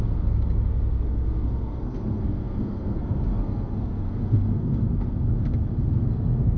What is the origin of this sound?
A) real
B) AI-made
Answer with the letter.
B